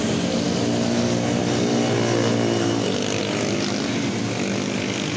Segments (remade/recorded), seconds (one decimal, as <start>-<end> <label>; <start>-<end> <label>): 0.0-5.2 recorded